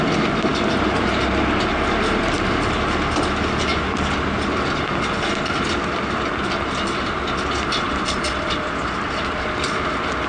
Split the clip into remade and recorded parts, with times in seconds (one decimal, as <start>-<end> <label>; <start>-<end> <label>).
0.0-10.3 recorded